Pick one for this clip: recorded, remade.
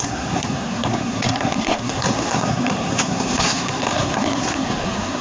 remade